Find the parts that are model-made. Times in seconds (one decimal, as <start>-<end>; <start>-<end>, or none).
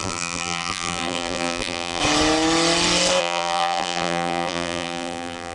0.0-2.0; 3.2-5.5